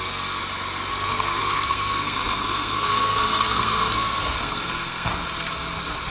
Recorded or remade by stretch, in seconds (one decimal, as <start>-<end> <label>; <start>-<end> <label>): 0.0-0.4 remade; 0.4-0.9 recorded; 0.9-5.1 remade; 5.1-6.1 recorded